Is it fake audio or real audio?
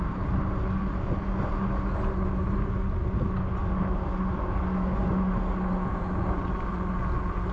real